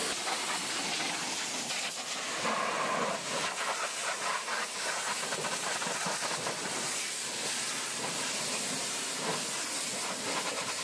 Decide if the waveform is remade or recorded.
recorded